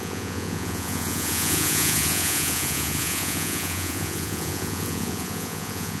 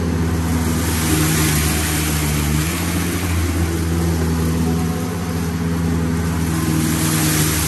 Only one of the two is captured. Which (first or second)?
second